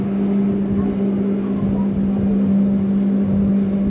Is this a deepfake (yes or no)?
no